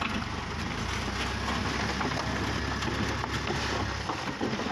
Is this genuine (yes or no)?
yes